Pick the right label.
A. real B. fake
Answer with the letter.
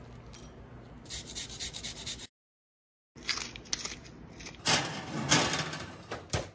A